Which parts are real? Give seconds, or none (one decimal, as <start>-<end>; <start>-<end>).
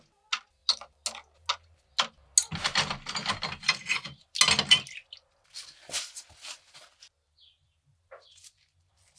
0.0-9.2